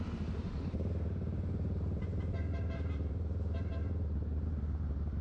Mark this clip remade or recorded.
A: remade